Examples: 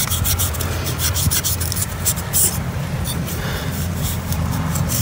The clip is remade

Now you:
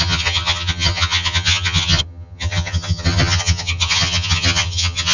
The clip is remade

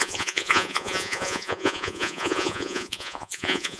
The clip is remade